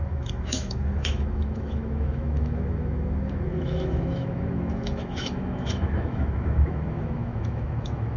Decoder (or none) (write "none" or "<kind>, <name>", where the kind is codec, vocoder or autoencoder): autoencoder, DAC-VAE